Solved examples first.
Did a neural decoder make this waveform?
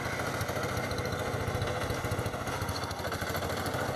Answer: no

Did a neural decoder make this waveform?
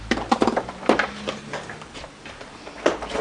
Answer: yes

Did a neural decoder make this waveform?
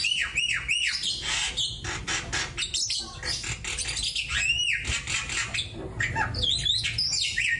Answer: no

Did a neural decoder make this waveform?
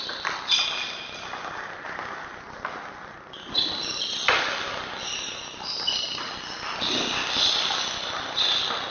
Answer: no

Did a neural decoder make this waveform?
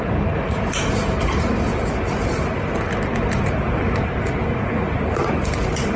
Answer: yes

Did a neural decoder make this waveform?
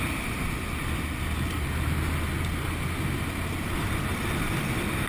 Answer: no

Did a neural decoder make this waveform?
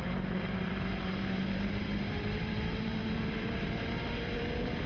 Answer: yes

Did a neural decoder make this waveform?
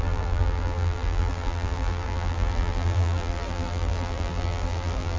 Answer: yes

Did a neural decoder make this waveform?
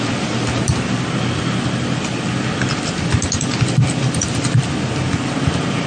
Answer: no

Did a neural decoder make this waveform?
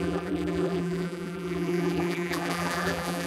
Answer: yes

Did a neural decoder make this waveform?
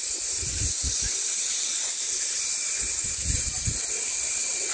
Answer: yes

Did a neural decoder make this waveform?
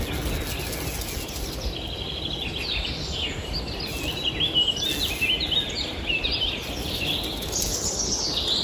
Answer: no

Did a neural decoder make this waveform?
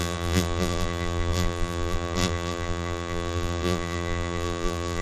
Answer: yes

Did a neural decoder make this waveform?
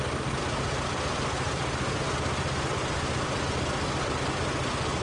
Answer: no